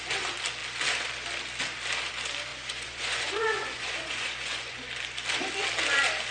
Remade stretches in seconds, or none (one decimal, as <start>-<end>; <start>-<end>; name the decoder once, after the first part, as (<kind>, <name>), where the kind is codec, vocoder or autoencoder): 2.5-4.9 (vocoder, Vocos)